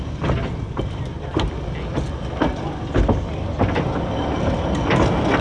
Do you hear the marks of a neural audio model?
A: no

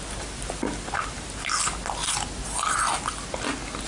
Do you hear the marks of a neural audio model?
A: no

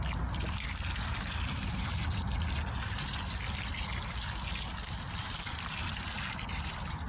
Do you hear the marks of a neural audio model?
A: no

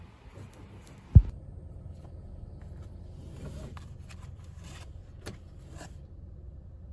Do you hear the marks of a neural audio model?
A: no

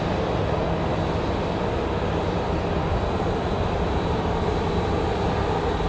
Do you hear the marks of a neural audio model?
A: no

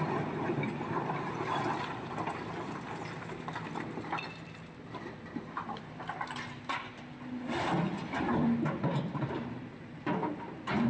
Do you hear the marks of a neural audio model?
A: no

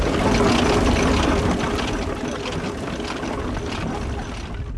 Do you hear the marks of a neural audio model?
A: no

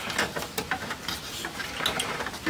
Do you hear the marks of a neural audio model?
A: no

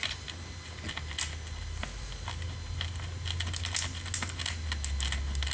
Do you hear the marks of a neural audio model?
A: no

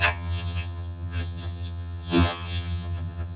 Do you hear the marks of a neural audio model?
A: yes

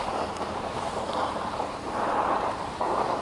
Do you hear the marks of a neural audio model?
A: yes